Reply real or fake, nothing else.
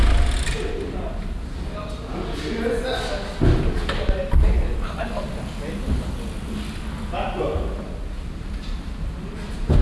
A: real